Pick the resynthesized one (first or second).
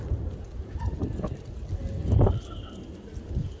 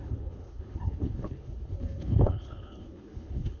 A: second